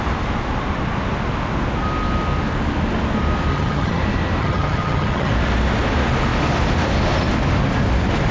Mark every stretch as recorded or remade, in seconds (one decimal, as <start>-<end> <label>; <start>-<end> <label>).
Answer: 0.0-3.5 recorded; 3.5-4.0 remade; 4.0-4.4 recorded; 4.4-5.3 remade; 5.3-8.3 recorded